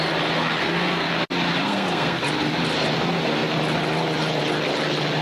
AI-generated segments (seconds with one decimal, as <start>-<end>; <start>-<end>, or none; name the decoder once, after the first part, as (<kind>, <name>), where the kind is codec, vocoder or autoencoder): 0.6-1.1 (codec, SNAC); 1.6-2.2